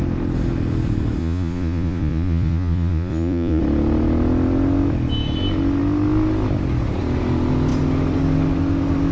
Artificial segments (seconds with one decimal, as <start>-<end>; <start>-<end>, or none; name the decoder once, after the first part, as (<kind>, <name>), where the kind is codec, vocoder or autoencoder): 1.2-3.6 (vocoder, Vocos)